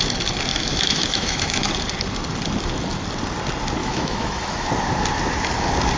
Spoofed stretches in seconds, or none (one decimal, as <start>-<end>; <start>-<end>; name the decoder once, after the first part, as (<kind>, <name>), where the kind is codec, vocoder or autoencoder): 0.5-1.7 (autoencoder, DAC-VAE); 3.8-4.7